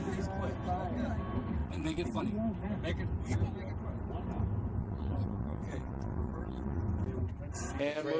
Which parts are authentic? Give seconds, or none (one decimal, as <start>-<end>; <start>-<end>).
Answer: 0.0-1.6; 2.2-4.8; 6.8-8.2